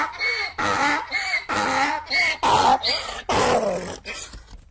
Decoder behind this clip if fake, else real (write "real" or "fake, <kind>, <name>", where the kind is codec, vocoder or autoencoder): real